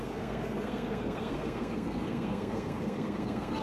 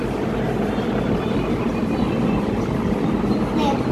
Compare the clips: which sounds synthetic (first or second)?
first